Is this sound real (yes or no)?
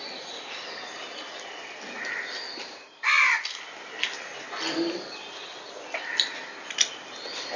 yes